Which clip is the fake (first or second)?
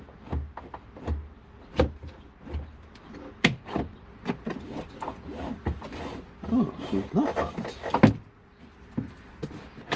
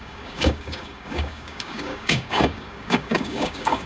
second